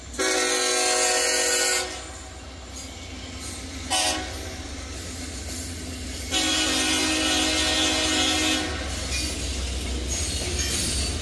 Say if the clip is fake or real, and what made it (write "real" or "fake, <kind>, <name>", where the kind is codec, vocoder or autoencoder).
real